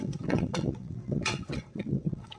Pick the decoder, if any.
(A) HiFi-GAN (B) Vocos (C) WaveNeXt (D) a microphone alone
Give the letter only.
C